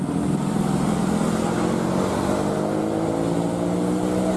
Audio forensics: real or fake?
real